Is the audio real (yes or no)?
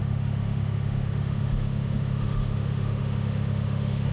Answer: no